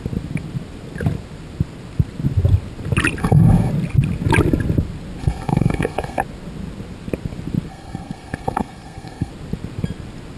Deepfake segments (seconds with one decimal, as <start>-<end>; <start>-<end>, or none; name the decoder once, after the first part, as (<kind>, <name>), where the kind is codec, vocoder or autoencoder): 3.2-3.7 (codec, SNAC); 5.2-6.2; 7.7-9.3